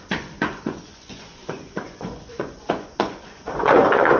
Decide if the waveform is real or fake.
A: fake